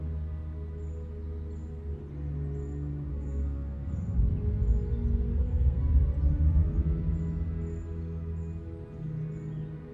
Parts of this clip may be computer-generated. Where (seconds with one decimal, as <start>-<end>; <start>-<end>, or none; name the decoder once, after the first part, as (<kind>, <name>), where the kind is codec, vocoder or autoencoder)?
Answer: 3.1-3.9 (codec, SNAC); 5.3-5.9